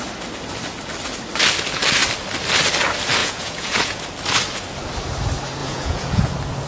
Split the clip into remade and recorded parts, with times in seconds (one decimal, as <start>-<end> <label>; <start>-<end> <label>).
0.0-3.2 recorded; 3.2-4.0 remade; 4.0-5.6 recorded; 5.6-6.2 remade; 6.2-6.7 recorded